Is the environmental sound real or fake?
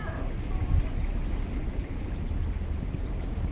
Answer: real